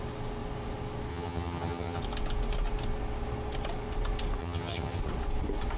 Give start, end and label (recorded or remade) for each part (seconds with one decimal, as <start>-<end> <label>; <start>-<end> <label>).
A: 0.0-1.1 recorded; 1.1-2.0 remade; 2.0-4.4 recorded; 4.4-5.0 remade; 5.0-5.8 recorded